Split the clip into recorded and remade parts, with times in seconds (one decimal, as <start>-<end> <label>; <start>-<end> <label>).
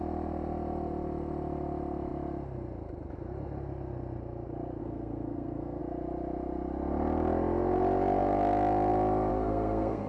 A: 0.0-4.8 recorded; 4.8-5.8 remade; 5.8-9.3 recorded; 9.3-10.1 remade